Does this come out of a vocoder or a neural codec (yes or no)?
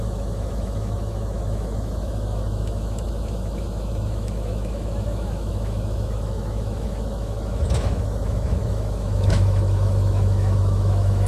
yes